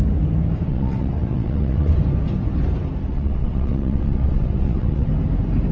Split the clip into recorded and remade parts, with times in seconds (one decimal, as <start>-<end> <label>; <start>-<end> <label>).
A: 0.0-0.7 recorded; 0.7-2.0 remade; 2.0-3.1 recorded; 3.1-5.1 remade; 5.1-5.7 recorded